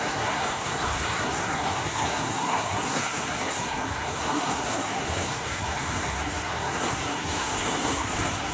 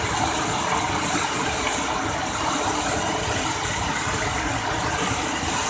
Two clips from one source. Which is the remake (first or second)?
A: first